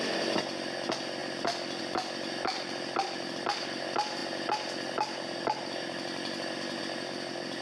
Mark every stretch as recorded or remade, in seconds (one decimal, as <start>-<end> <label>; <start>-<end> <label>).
0.0-7.6 recorded